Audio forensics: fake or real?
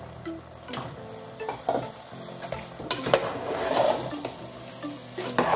real